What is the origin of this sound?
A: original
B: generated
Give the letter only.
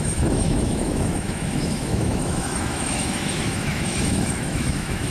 B